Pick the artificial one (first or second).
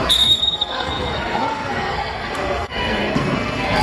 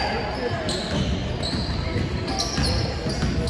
first